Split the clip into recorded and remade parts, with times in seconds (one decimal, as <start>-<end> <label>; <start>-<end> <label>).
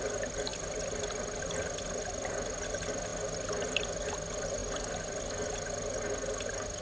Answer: 0.0-4.6 recorded; 4.6-5.2 remade; 5.2-6.8 recorded